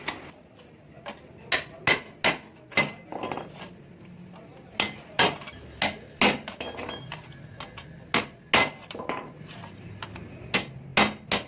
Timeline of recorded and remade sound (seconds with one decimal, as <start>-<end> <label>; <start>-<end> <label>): 0.0-11.5 recorded